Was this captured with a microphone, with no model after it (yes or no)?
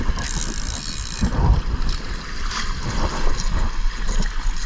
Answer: yes